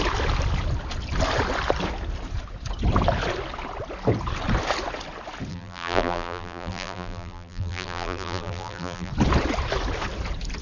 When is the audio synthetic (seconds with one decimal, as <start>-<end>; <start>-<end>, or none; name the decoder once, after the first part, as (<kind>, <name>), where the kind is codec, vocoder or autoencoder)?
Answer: 5.5-9.1 (vocoder, BigVGAN v2)